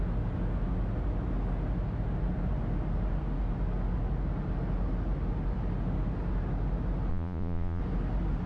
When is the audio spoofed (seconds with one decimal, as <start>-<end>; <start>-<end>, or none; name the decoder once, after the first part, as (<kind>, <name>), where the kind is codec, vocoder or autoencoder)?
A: 7.1-7.8 (vocoder, Vocos)